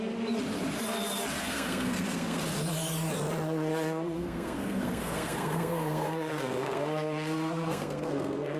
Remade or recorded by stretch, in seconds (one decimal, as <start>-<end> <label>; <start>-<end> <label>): 0.0-1.4 recorded; 1.4-2.4 remade; 2.4-3.7 recorded; 3.7-8.6 remade